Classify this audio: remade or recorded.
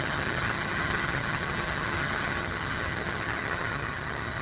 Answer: remade